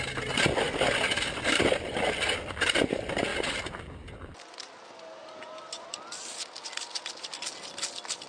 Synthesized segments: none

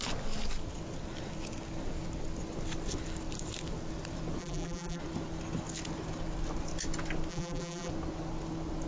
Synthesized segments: 4.4-5.0 (vocoder, BigVGAN v2); 7.3-7.9